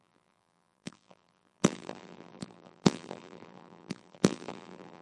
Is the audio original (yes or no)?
no